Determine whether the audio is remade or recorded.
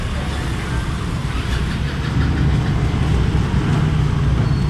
recorded